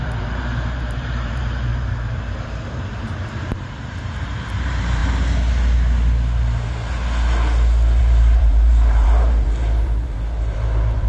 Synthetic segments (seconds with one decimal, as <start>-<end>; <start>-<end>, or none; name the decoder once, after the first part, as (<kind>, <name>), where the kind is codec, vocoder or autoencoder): 0.0-5.0 (vocoder, BigVGAN v2); 8.0-11.1